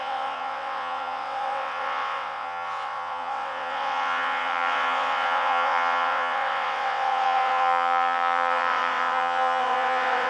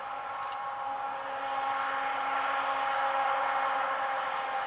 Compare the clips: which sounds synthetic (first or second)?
first